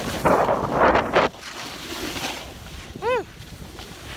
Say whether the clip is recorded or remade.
recorded